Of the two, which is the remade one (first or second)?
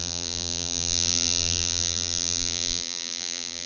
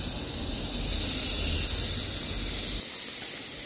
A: first